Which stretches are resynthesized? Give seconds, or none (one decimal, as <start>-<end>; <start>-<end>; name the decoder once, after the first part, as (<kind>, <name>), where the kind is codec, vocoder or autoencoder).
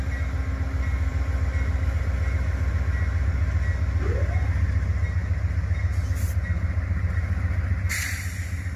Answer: none